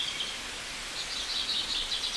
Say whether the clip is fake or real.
real